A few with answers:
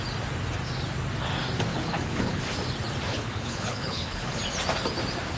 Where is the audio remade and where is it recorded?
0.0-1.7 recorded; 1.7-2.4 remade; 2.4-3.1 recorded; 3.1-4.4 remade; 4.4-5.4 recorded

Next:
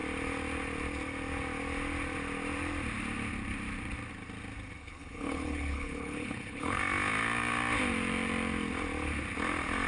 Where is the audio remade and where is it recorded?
0.0-4.8 recorded; 4.8-6.8 remade; 6.8-9.9 recorded

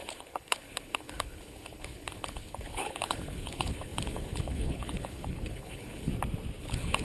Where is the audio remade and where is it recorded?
0.0-6.1 remade; 6.1-6.6 recorded; 6.6-7.0 remade

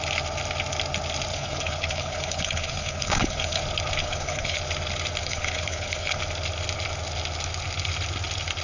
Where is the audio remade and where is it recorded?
0.0-1.3 recorded; 1.3-3.6 remade; 3.6-4.0 recorded; 4.0-4.6 remade; 4.6-5.2 recorded; 5.2-6.2 remade; 6.2-8.6 recorded

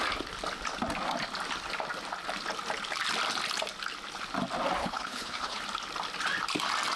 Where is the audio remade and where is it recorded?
0.0-4.8 recorded; 4.8-5.6 remade; 5.6-7.0 recorded

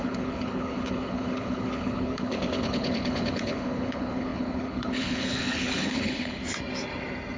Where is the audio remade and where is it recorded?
0.0-6.4 remade; 6.4-7.4 recorded

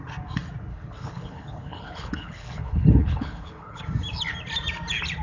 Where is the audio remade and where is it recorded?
0.0-0.7 recorded; 0.7-3.8 remade; 3.8-5.2 recorded